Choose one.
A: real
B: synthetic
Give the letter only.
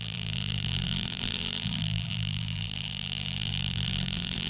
B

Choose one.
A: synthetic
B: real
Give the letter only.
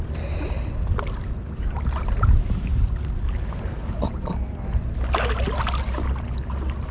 B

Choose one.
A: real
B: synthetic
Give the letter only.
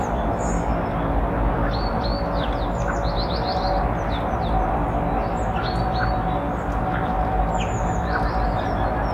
A